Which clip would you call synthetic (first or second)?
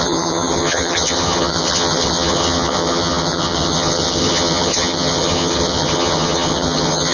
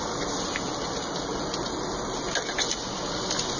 first